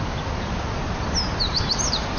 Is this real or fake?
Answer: real